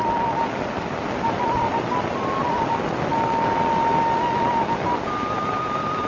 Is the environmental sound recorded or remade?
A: recorded